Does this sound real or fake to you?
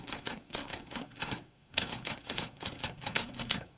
fake